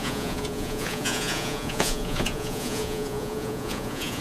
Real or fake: fake